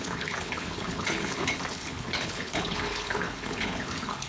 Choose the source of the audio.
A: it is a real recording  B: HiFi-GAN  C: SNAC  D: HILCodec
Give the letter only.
D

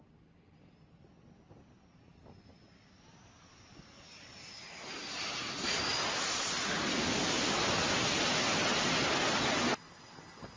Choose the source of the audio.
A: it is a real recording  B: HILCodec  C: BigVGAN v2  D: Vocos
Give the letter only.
A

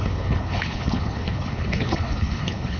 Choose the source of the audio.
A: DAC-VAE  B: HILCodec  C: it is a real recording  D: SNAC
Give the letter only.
B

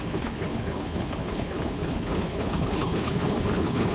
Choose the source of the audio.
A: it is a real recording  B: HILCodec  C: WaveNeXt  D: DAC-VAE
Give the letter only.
B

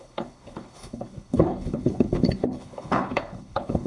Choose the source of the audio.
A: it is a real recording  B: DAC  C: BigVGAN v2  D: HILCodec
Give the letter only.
D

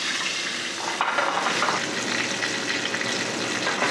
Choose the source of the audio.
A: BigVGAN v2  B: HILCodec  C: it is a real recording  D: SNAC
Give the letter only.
C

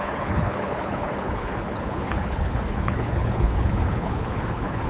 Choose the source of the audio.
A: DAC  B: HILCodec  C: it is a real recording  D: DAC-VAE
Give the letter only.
B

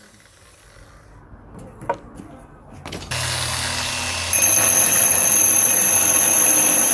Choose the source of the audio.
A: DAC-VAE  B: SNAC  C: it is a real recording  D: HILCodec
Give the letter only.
C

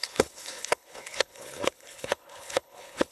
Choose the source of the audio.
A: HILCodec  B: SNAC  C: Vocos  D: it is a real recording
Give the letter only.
A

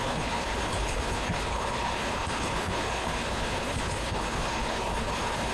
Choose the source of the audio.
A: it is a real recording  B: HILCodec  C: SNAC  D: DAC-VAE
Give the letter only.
B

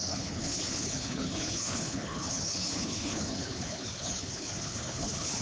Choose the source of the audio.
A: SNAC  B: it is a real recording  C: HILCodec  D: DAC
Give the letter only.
C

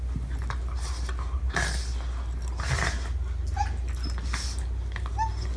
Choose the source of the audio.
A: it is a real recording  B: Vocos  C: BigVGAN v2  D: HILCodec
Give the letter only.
A